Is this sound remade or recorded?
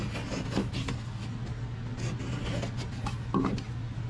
recorded